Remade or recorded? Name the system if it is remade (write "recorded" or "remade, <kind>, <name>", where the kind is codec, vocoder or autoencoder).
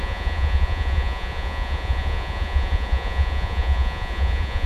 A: remade, vocoder, Vocos